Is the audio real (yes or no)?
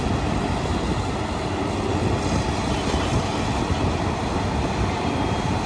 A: yes